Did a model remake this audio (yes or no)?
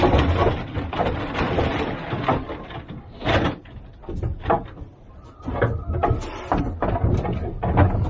no